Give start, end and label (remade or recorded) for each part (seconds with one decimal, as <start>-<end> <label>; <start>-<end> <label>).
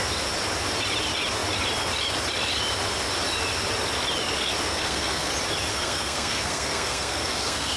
0.0-4.7 recorded; 4.7-5.3 remade; 5.3-5.7 recorded; 5.7-7.8 remade